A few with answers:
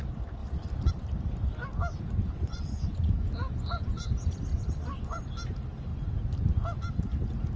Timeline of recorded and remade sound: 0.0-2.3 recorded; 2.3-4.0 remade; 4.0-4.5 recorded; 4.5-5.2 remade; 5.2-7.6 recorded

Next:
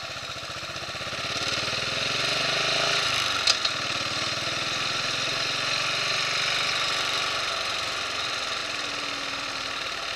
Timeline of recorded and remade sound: 0.0-8.6 recorded; 8.6-9.5 remade; 9.5-10.2 recorded

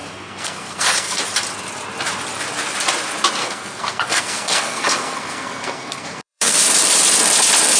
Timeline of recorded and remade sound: 0.0-1.2 remade; 1.2-3.4 recorded; 3.4-6.6 remade; 6.6-7.8 recorded

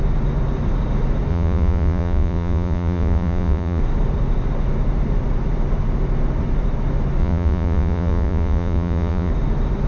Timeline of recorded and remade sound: 0.0-1.3 recorded; 1.3-3.8 remade; 3.8-7.2 recorded; 7.2-9.3 remade; 9.3-9.9 recorded